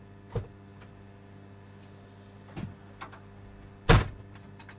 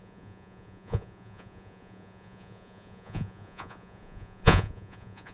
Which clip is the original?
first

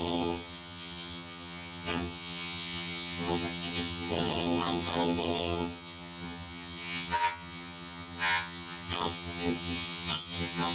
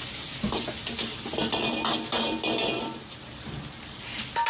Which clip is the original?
second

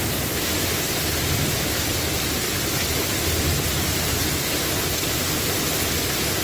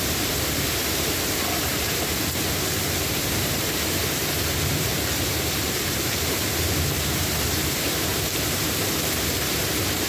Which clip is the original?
first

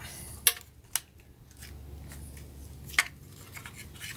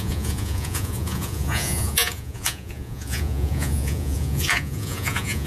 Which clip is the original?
first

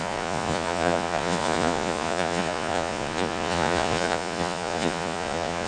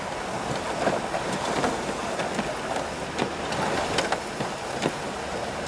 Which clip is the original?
second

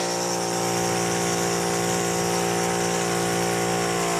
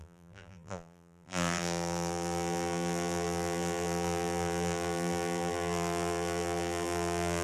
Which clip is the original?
first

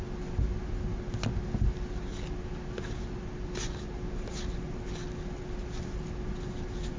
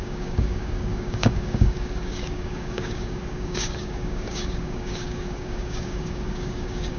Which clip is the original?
first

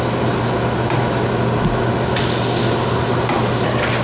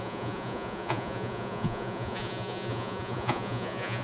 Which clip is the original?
first